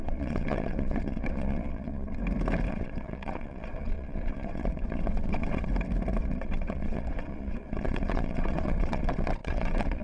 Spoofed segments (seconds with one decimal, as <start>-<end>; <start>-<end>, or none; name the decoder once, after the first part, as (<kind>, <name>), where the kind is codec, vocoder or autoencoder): 0.0-2.2 (vocoder, WaveNeXt); 2.7-5.7; 6.2-10.0